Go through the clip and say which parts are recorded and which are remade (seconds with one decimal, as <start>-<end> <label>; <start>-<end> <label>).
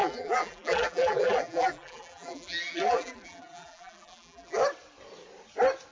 0.0-4.6 remade; 4.6-5.9 recorded